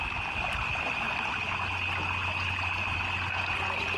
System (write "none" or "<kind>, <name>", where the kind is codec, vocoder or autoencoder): none